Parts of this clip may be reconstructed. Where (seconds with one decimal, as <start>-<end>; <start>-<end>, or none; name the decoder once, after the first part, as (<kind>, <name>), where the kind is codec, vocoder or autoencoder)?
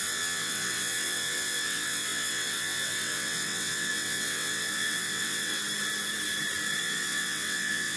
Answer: 0.0-5.6 (vocoder, WaveNeXt); 6.8-8.0